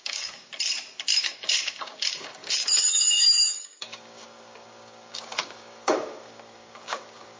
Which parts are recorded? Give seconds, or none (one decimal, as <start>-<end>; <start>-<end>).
0.5-1.2